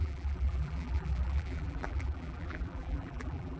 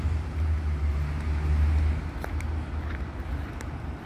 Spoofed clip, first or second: first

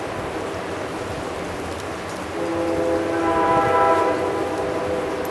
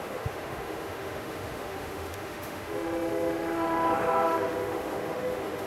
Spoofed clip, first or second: second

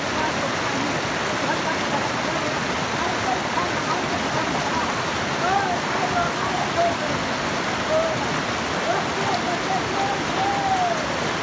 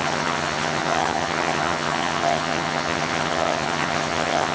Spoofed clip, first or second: second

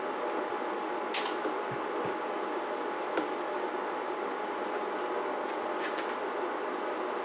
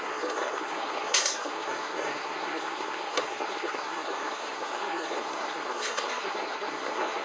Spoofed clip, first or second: second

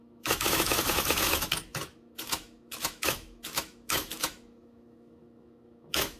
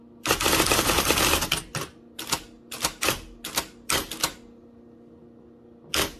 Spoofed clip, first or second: first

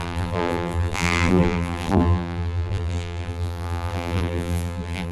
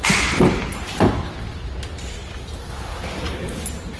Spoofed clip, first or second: first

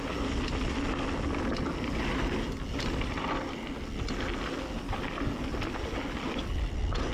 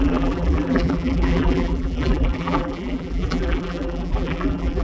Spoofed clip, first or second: second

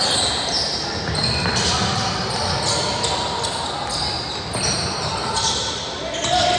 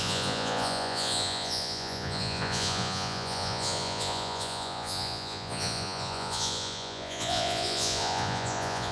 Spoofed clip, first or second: second